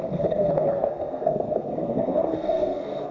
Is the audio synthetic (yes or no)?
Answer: yes